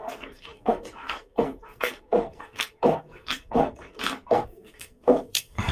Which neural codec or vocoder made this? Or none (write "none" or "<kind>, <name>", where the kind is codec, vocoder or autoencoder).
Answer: codec, SNAC